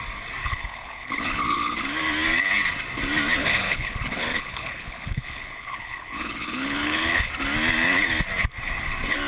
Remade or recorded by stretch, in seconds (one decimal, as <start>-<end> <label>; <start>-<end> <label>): 0.0-0.4 recorded; 0.4-1.8 remade; 1.8-3.4 recorded; 3.4-7.3 remade; 7.3-9.3 recorded